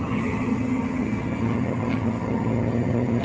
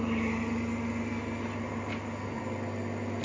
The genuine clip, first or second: second